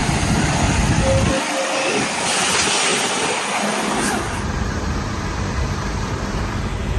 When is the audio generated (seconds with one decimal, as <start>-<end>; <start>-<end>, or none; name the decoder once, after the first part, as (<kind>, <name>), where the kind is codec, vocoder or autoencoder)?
0.0-0.8 (vocoder, BigVGAN v2); 2.9-6.4